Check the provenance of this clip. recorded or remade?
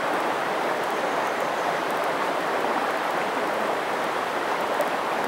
remade